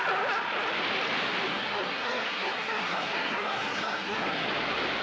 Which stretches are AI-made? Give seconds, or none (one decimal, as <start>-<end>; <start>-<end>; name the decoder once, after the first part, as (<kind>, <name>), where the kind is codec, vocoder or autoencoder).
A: 1.5-4.5 (codec, SNAC)